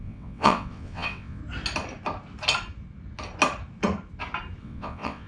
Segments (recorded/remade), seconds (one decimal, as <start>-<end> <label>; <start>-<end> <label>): 0.0-1.4 remade; 1.4-4.6 recorded; 4.6-5.3 remade